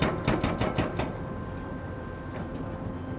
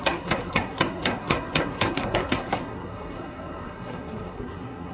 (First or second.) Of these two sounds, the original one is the first